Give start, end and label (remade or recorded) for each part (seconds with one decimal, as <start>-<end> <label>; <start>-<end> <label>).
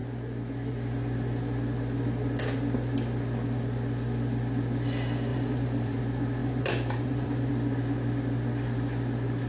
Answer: 0.0-5.3 recorded; 5.3-6.0 remade; 6.0-6.4 recorded; 6.4-7.5 remade; 7.5-9.5 recorded